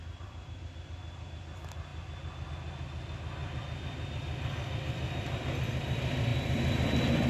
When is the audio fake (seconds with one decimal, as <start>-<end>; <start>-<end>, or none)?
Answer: 0.0-0.6; 3.4-5.5; 6.3-7.3